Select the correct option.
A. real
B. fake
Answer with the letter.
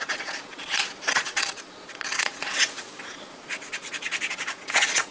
B